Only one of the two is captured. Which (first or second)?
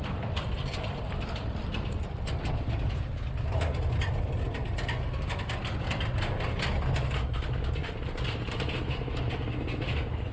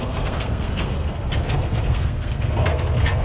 first